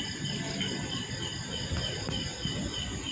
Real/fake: real